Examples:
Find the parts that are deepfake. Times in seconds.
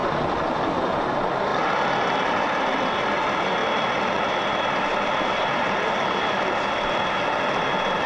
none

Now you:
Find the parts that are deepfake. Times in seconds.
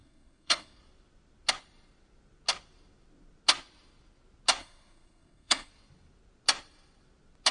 0.0-0.8 (codec, SNAC); 4.6-5.7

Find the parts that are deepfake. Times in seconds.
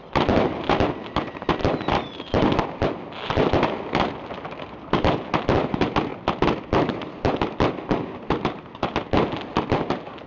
none